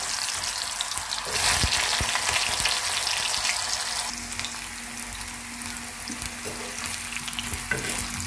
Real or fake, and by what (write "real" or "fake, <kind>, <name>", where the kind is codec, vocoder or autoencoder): real